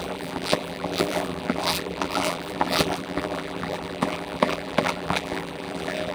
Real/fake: fake